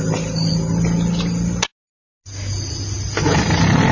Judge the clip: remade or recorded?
recorded